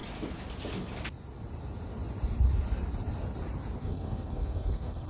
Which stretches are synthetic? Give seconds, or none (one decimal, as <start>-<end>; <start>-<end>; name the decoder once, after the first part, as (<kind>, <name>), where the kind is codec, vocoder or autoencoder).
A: 3.8-5.1 (codec, SNAC)